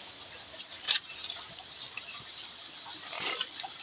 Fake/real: real